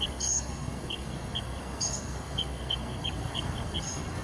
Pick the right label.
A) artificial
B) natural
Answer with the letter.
A